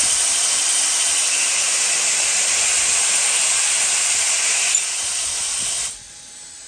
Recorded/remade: recorded